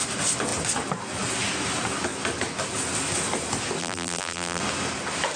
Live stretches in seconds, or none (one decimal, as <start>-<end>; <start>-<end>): 0.0-3.8; 4.6-5.4